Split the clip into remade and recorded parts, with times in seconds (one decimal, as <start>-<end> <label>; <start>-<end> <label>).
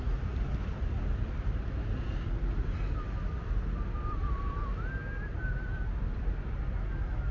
0.0-7.3 recorded